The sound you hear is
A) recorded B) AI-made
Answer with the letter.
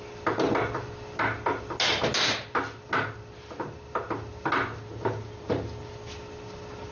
A